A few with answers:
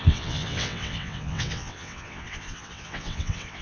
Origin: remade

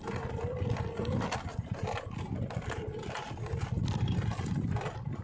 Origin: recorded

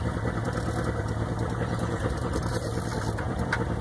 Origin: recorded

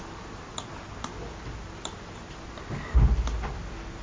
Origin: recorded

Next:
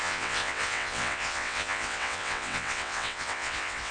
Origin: remade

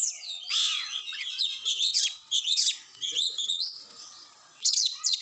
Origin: remade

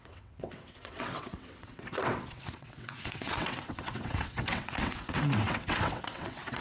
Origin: remade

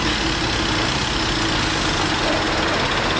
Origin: recorded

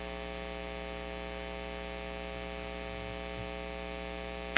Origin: recorded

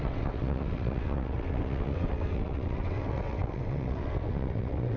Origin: remade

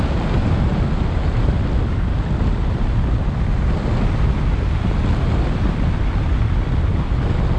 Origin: recorded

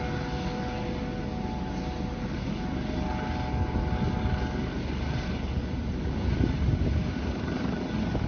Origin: recorded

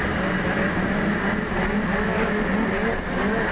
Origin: recorded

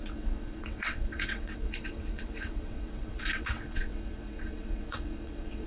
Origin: remade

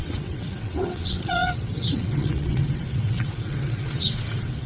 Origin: remade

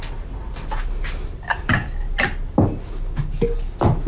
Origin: recorded